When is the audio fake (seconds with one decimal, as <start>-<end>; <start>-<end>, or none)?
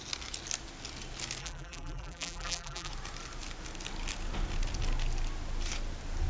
1.4-2.9